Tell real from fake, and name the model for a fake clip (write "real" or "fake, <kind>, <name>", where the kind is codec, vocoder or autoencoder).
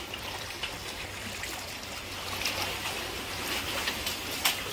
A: real